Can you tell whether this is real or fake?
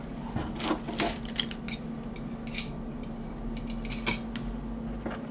real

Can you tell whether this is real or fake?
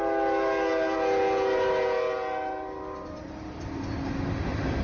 real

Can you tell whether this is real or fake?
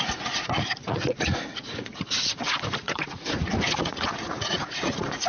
fake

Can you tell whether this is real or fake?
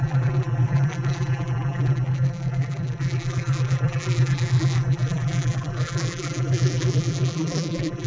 fake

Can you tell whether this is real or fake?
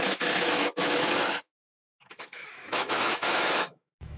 fake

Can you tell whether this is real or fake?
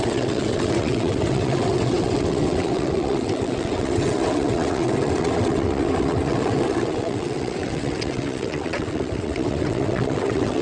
fake